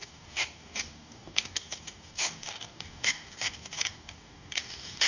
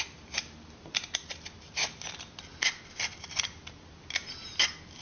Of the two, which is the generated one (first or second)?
first